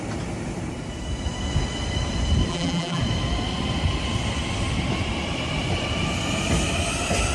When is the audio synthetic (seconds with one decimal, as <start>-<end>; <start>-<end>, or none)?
2.5-3.0